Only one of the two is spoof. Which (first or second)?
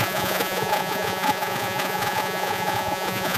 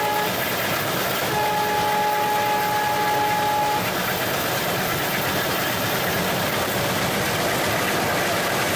first